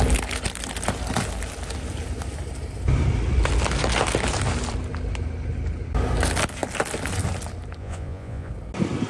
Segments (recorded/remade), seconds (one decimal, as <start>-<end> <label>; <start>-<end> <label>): 0.0-7.8 recorded; 7.8-8.5 remade; 8.5-9.1 recorded